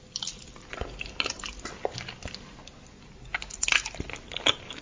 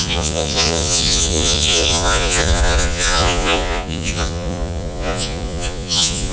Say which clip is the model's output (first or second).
second